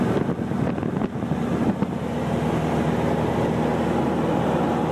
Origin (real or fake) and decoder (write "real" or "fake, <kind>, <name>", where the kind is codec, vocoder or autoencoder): real